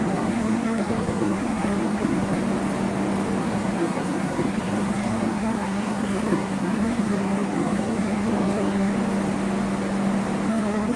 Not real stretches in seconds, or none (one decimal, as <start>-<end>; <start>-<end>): 0.0-2.4; 3.4-8.9; 10.5-11.0